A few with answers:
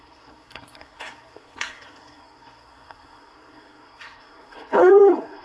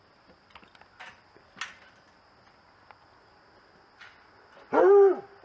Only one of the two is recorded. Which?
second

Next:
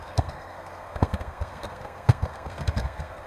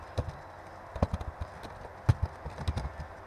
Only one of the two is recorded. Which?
second